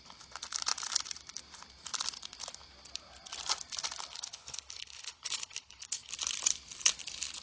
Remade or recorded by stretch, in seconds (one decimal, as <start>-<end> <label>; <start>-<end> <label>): 0.0-4.1 recorded; 4.1-6.1 remade; 6.1-7.4 recorded